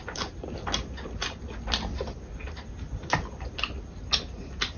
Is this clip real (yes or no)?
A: yes